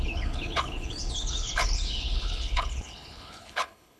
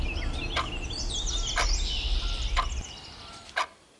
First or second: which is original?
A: second